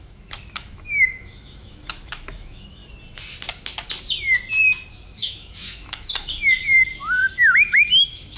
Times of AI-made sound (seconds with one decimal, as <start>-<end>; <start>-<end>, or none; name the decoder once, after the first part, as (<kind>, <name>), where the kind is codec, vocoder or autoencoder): 0.0-2.8 (autoencoder, DAC-VAE); 4.9-8.4

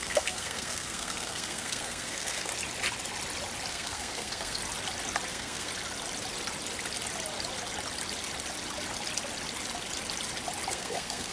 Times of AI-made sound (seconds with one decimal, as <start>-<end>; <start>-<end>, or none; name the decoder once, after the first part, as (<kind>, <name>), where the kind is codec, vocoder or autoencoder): 0.0-2.5 (codec, SNAC); 3.7-4.6; 5.3-5.7; 10.7-11.3

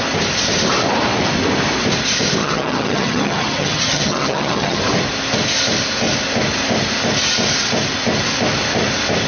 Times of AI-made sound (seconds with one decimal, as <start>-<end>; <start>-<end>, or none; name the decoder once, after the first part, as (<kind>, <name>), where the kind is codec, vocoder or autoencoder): 2.4-4.8 (vocoder, HiFi-GAN)

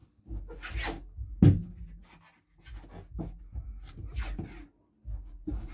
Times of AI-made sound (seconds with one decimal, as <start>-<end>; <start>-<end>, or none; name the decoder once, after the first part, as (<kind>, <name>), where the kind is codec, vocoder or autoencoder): 3.4-4.1 (vocoder, BigVGAN v2); 5.3-5.7